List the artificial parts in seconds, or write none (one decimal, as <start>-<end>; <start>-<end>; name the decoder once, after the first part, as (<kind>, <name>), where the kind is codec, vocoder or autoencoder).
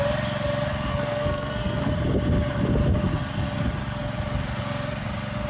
0.9-1.9 (codec, SNAC)